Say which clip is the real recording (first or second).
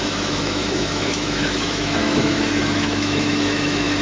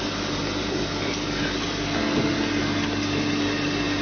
second